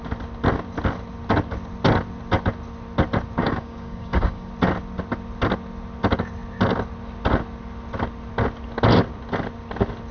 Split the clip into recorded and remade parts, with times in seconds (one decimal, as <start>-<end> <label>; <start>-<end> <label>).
0.0-3.4 recorded; 3.4-4.5 remade; 4.5-10.1 recorded

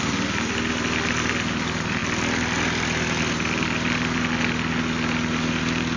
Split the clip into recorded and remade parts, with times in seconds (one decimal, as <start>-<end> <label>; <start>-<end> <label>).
0.0-6.0 recorded

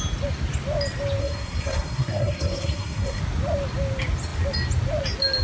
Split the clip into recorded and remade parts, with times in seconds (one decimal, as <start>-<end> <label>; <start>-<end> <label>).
0.0-1.2 recorded; 1.2-3.2 remade; 3.2-5.4 recorded

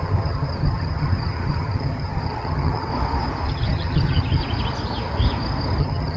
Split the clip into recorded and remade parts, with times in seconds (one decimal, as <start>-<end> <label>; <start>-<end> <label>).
0.0-2.9 remade; 2.9-3.5 recorded; 3.5-4.4 remade; 4.4-5.8 recorded; 5.8-6.2 remade

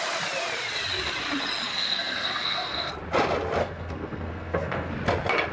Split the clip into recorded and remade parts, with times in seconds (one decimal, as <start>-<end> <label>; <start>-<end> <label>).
0.0-1.7 recorded; 1.7-2.9 remade; 2.9-3.6 recorded; 3.6-4.9 remade; 4.9-5.5 recorded